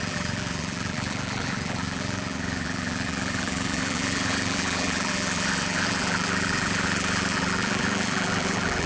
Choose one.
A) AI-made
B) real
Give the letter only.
A